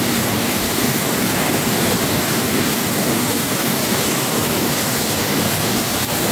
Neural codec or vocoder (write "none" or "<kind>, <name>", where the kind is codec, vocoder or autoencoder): codec, DAC